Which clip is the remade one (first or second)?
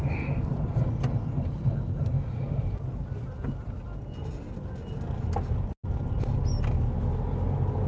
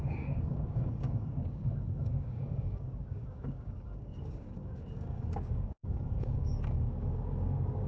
second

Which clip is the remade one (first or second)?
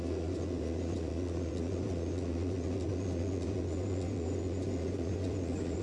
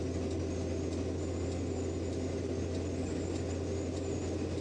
first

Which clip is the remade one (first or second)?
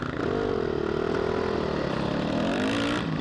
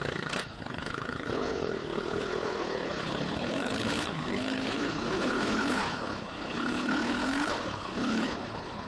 second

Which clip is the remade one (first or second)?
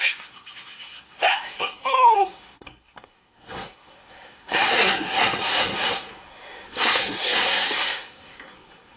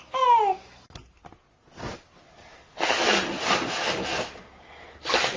first